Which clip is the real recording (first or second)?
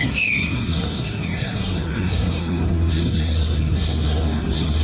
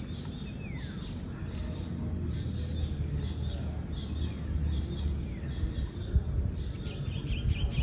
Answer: second